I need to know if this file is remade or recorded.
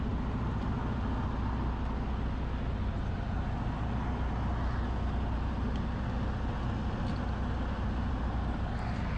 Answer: recorded